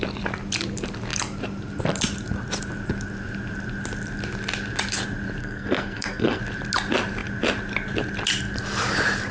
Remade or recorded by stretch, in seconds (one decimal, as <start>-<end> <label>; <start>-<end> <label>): 0.0-5.4 recorded; 5.4-6.4 remade; 6.4-9.3 recorded